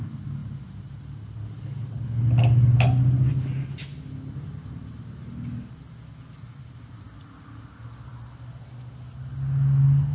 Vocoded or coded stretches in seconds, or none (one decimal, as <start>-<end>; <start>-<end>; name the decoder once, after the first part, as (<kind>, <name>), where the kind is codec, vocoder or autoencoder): none